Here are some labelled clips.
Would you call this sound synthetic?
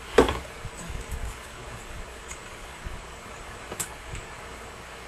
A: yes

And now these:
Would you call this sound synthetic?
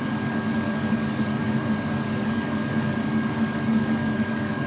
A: yes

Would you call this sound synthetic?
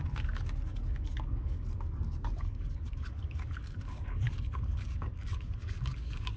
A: yes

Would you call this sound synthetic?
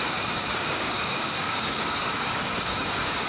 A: yes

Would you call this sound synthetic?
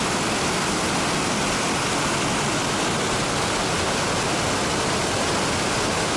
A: no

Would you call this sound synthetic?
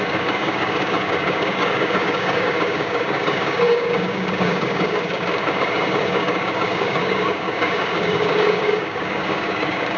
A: yes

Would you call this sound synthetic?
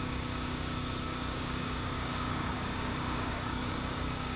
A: yes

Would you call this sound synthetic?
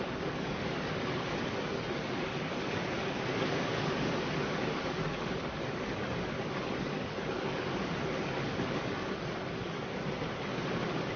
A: yes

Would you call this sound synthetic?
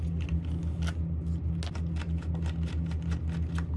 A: no